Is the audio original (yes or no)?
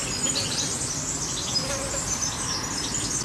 yes